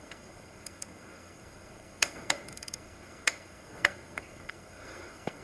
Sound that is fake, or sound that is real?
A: fake